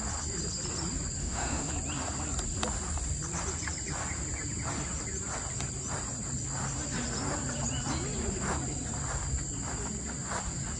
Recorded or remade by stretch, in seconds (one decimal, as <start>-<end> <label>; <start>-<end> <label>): 0.0-1.2 recorded; 1.2-1.7 remade; 1.7-10.8 recorded